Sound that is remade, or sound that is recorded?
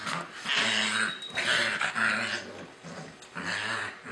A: recorded